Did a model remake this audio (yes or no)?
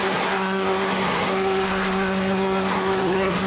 yes